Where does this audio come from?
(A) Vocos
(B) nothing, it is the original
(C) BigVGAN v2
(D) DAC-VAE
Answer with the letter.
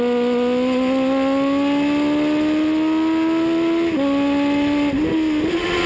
B